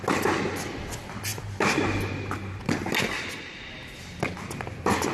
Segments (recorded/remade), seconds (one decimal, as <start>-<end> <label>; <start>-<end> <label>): 0.0-5.1 recorded